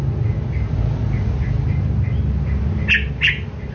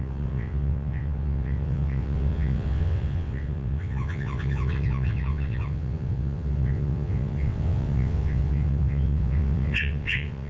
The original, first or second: first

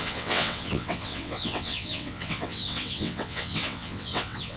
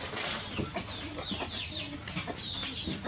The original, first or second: second